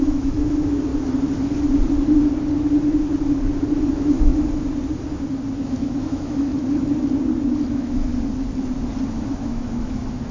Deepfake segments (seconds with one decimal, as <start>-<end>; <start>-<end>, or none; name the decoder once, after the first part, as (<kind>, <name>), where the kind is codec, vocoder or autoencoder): 0.0-0.9 (autoencoder, DAC-VAE); 3.9-4.3; 5.6-6.5; 7.7-8.1; 9.1-10.3

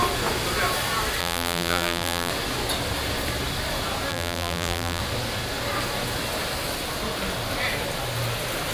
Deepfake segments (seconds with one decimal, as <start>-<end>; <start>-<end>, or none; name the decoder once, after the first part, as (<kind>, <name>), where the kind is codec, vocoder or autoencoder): 1.2-2.3 (vocoder, BigVGAN v2); 4.1-5.0

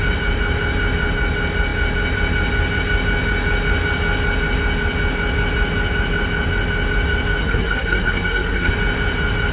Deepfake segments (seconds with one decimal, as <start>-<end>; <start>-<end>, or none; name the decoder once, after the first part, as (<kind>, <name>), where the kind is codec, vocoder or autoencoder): 7.4-8.7 (codec, SNAC)

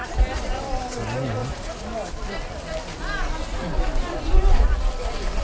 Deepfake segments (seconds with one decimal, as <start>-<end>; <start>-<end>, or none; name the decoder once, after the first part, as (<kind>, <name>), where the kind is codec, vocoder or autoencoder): none